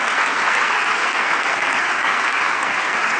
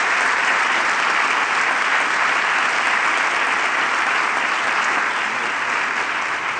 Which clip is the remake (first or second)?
first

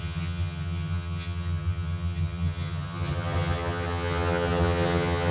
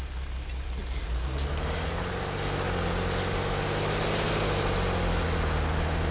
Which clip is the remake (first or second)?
first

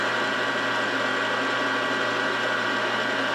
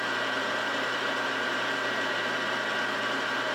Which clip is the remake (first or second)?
second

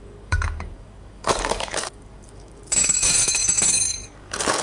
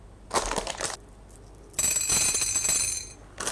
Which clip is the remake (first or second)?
first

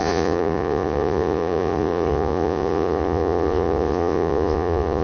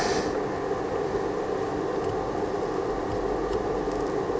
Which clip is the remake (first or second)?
first